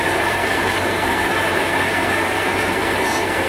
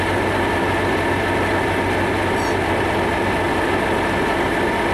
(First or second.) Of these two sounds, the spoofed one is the first